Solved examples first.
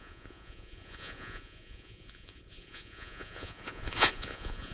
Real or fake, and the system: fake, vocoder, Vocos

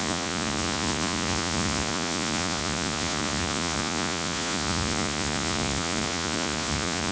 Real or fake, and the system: fake, vocoder, Vocos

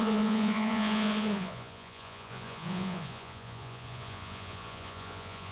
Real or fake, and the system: fake, vocoder, Vocos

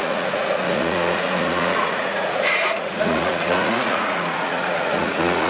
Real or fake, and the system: fake, vocoder, Vocos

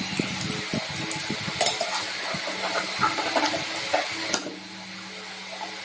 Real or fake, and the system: real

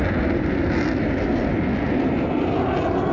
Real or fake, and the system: real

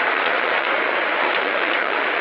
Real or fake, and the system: fake, vocoder, Vocos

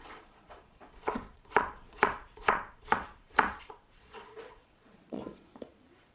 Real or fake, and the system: fake, vocoder, Vocos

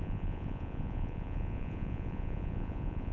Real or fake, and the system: fake, vocoder, Vocos